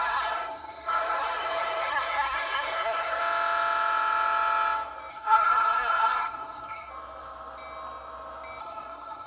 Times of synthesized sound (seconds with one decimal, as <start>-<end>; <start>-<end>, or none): 0.0-3.2; 5.1-6.9; 8.6-9.3

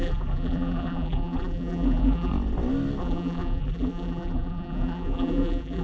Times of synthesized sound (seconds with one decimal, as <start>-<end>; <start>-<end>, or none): 0.0-2.3; 3.0-5.8

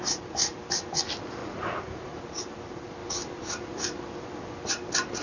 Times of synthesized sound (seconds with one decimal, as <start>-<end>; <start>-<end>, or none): 1.4-2.2

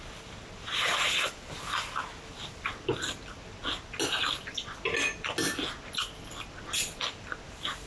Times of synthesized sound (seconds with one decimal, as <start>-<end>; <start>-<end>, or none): none

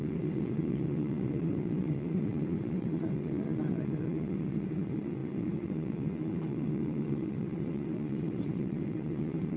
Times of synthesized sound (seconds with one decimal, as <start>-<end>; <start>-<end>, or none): 0.0-9.6